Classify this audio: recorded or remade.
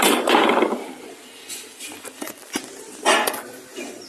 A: recorded